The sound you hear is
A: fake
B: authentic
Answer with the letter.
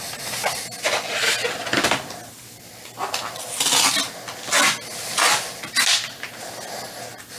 B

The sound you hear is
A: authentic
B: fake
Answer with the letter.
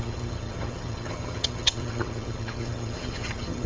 B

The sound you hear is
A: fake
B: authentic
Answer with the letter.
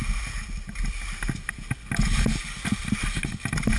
B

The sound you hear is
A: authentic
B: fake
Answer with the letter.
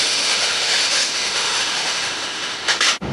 B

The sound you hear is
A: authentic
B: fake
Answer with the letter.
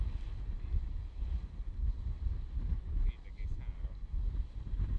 A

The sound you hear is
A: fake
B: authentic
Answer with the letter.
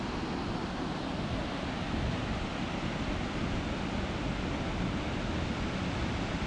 B